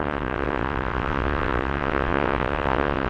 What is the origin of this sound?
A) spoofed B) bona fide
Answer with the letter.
A